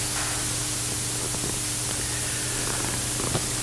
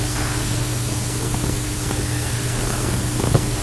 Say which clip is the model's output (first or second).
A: second